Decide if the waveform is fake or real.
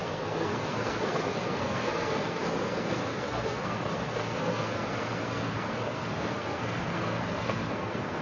fake